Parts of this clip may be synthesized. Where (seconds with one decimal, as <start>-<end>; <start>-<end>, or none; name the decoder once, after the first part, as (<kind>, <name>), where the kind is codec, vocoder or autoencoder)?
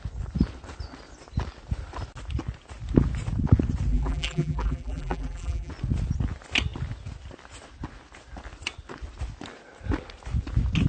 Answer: 3.9-5.7 (vocoder, BigVGAN v2)